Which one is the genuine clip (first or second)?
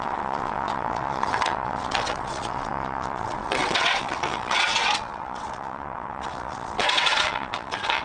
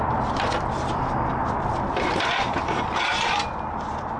second